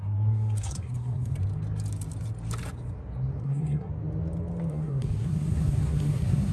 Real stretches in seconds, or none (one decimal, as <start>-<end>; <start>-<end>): 1.3-3.4; 3.9-4.7